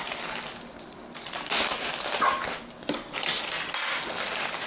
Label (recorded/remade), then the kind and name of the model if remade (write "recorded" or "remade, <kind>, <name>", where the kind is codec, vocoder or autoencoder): recorded